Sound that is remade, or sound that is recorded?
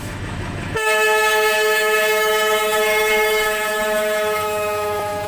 remade